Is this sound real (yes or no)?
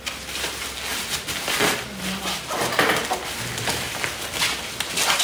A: yes